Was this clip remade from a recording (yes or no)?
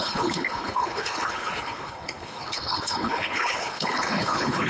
yes